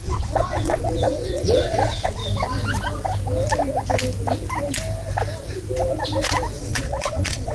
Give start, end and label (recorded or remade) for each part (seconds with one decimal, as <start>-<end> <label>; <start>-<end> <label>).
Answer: 0.0-2.2 remade; 2.2-6.6 recorded; 6.6-7.5 remade